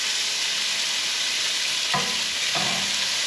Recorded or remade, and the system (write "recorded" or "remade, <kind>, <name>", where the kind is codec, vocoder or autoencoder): recorded